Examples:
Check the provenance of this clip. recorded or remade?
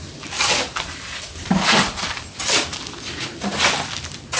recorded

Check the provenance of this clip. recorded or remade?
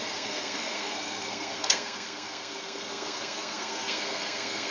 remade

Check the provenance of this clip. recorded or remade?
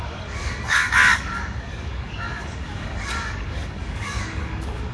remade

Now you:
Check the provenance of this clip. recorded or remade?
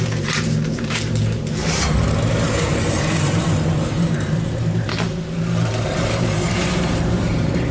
remade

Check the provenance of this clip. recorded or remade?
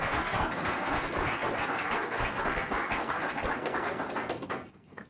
remade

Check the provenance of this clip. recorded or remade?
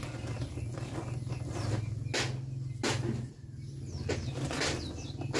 recorded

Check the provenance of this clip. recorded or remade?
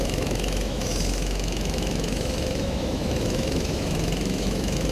remade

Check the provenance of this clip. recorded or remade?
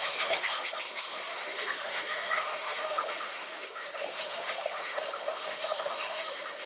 remade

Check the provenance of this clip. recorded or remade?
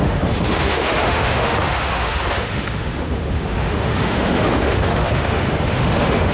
remade